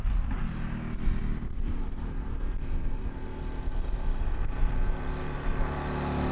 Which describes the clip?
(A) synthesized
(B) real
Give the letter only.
B